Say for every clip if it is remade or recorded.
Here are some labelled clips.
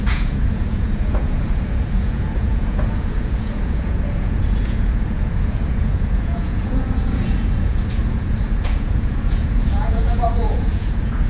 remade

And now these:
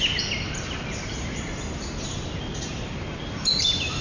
recorded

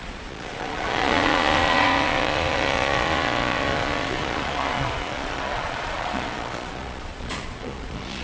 remade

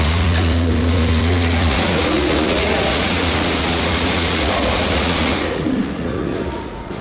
remade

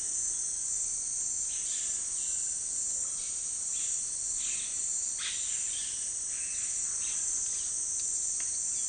recorded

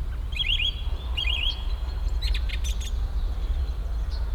recorded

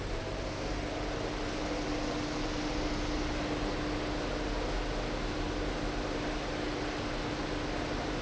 recorded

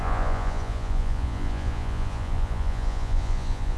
remade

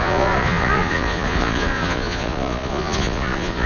remade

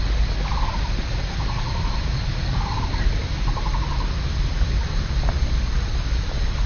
recorded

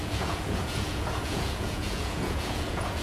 remade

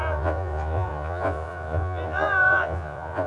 remade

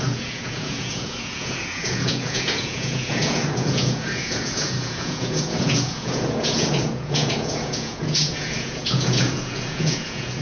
remade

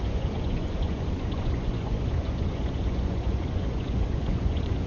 remade